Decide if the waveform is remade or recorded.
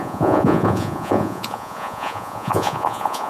remade